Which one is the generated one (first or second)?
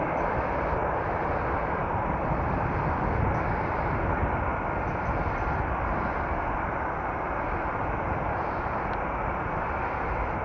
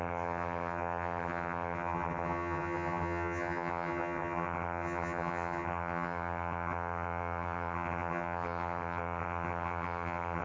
second